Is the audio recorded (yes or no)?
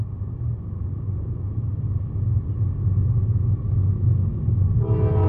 yes